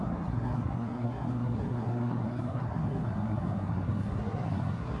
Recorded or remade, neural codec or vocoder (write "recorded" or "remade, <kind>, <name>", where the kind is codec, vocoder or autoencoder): remade, codec, SNAC